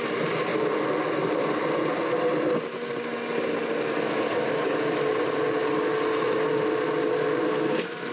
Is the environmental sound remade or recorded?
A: recorded